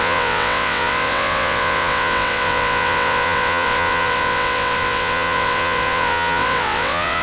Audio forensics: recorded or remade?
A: remade